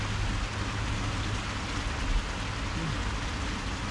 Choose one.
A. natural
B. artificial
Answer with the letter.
A